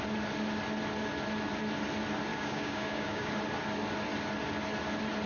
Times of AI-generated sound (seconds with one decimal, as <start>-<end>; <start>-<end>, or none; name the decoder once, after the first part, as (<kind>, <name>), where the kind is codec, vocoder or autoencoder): 2.3-3.3 (codec, DAC)